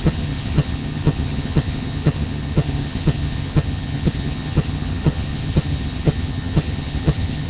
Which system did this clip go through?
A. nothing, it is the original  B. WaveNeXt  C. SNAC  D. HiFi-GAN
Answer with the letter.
D